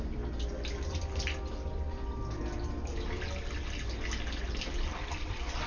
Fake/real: real